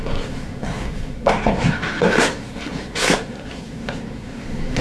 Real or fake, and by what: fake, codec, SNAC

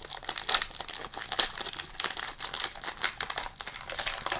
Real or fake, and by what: real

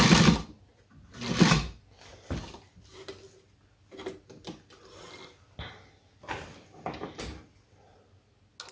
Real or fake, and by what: real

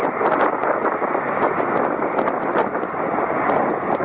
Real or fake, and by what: real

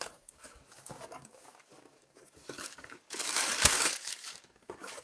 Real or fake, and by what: fake, codec, DAC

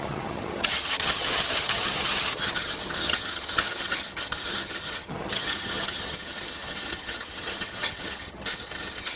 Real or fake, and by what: fake, vocoder, HiFi-GAN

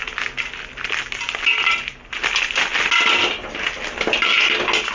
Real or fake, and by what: real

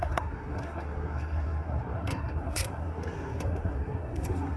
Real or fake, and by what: fake, codec, SNAC